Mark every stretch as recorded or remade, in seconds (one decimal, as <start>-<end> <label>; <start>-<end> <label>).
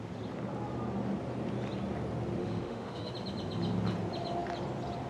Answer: 0.0-2.4 recorded; 2.4-3.1 remade; 3.1-5.1 recorded